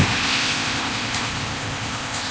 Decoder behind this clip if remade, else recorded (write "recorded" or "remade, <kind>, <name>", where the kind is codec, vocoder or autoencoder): remade, codec, ZipCodec